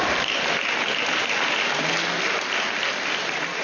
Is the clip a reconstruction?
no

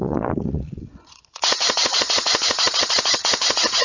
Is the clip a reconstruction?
yes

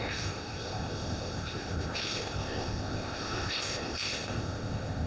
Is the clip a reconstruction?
yes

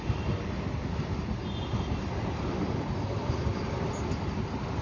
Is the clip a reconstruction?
no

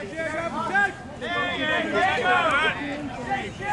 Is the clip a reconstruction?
no